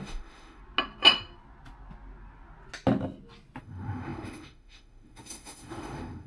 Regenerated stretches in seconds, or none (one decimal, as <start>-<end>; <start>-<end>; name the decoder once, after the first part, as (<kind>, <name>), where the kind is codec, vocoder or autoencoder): 0.0-0.6 (autoencoder, DAC-VAE); 3.6-6.3